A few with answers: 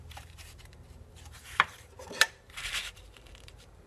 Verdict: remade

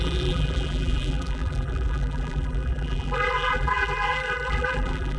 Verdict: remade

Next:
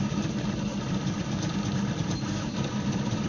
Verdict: recorded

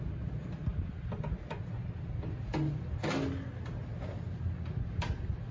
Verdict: recorded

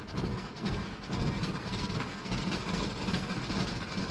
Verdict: remade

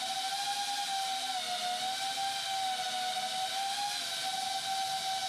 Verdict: recorded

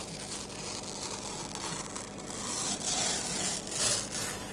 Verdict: recorded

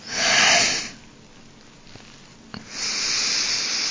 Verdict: recorded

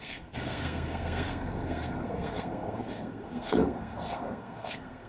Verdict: remade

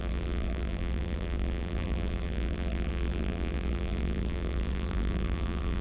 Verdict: remade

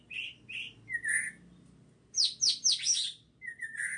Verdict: recorded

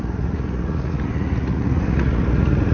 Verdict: remade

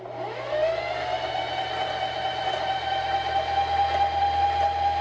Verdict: recorded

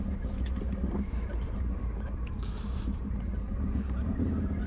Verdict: remade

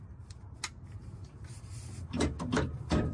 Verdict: remade